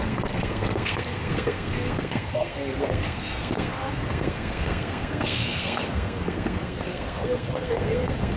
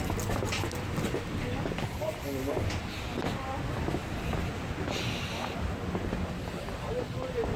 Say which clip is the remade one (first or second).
first